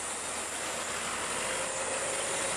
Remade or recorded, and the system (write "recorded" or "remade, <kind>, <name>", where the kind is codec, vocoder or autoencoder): recorded